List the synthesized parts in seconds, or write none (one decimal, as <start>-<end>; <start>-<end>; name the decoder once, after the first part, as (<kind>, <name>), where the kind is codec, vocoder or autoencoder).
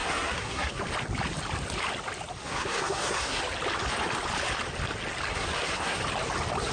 0.0-0.8 (codec, SNAC); 2.4-3.4; 5.3-6.0